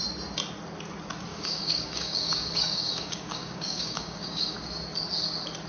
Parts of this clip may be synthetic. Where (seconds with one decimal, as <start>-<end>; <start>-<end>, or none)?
1.3-4.7